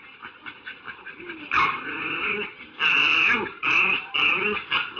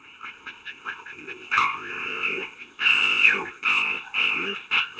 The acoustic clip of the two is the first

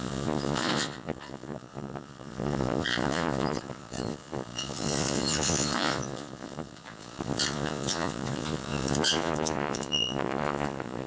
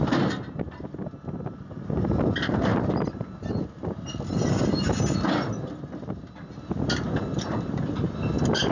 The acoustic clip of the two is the second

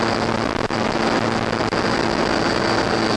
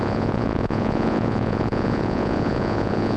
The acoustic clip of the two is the first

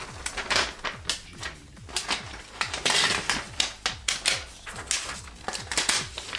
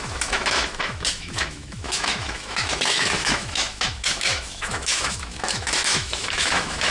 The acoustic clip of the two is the first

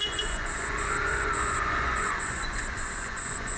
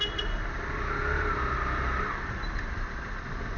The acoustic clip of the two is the second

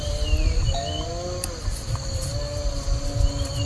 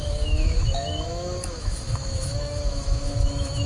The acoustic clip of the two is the first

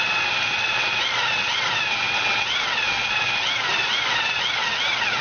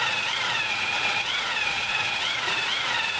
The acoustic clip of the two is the first